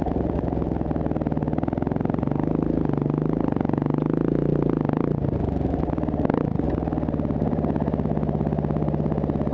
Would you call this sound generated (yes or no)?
no